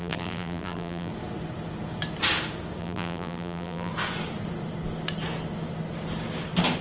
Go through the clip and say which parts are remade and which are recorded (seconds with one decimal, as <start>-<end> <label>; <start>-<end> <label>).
0.0-1.1 remade; 1.1-2.8 recorded; 2.8-3.9 remade; 3.9-6.8 recorded